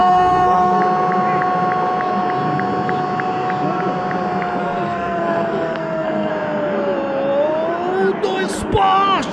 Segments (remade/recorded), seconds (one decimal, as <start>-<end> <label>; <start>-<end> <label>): 0.0-0.8 remade; 0.8-4.6 recorded; 4.6-6.3 remade; 6.3-9.3 recorded